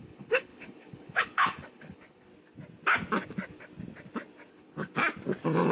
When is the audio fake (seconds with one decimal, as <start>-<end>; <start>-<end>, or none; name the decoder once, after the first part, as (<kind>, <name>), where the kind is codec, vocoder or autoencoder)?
0.0-2.3 (codec, HILCodec); 4.5-5.0